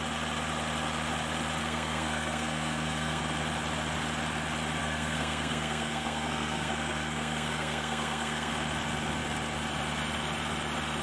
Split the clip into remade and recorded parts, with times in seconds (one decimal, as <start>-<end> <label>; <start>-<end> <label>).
0.0-1.6 recorded; 1.6-3.2 remade; 3.2-4.8 recorded; 4.8-8.5 remade; 8.5-11.0 recorded